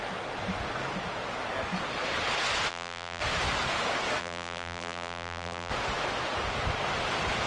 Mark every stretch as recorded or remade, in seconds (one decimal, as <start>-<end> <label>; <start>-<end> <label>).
0.0-2.7 recorded; 2.7-3.2 remade; 3.2-4.2 recorded; 4.2-5.7 remade; 5.7-7.5 recorded